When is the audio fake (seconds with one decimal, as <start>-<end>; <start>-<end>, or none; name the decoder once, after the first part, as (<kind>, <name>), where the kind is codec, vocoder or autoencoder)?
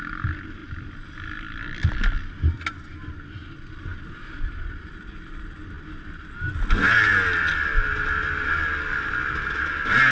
none